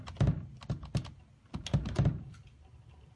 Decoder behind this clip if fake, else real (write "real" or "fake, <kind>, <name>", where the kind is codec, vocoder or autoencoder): real